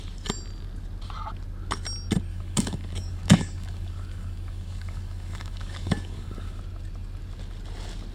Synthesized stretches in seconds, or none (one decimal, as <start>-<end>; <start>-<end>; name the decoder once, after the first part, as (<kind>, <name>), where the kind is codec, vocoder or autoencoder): 2.3-6.6 (codec, DAC)